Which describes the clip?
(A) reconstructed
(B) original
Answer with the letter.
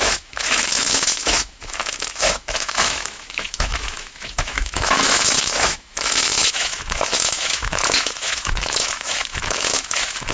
A